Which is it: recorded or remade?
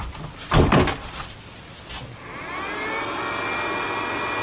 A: recorded